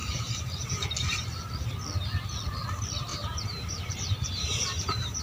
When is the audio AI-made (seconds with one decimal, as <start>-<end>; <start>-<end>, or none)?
3.1-5.2